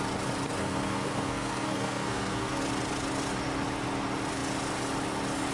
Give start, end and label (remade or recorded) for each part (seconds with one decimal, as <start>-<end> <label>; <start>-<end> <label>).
0.0-0.6 recorded; 0.6-2.6 remade; 2.6-5.5 recorded